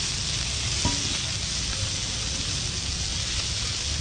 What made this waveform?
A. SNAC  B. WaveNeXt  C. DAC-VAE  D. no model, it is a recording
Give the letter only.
D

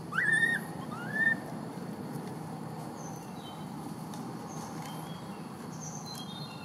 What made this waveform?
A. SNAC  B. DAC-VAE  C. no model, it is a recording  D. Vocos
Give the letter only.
C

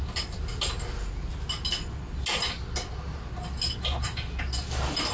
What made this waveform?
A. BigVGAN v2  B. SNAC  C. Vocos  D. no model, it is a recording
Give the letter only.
D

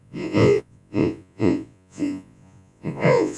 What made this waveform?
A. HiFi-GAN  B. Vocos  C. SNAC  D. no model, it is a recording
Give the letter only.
B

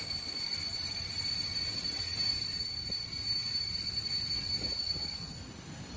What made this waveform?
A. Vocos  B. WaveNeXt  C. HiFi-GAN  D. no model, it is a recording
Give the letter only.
D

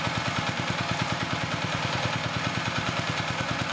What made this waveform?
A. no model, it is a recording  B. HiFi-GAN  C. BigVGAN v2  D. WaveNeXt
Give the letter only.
C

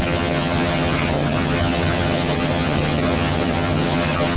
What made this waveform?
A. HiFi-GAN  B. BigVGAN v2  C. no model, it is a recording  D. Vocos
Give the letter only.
A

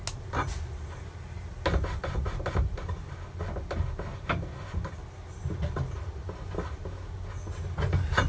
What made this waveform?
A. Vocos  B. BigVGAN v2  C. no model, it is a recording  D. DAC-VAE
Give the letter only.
C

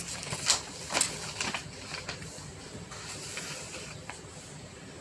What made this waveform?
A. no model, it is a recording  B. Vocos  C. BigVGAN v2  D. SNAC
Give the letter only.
A